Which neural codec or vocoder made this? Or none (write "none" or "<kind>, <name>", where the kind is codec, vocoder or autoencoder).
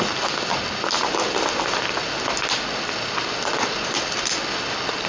none